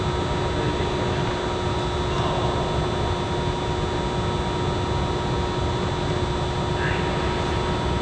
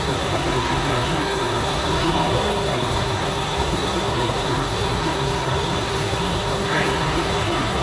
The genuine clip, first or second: first